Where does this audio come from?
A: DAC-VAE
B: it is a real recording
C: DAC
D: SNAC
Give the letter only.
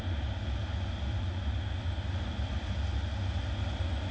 B